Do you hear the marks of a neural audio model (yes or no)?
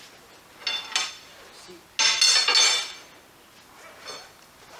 no